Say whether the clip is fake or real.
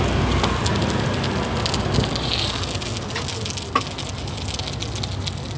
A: real